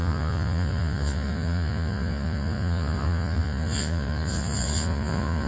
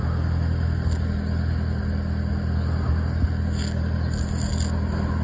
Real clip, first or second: second